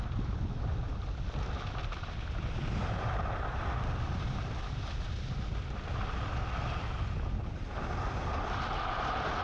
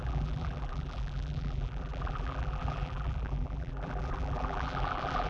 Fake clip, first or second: second